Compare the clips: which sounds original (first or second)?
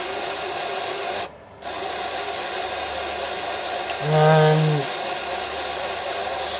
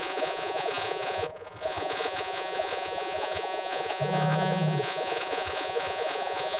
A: first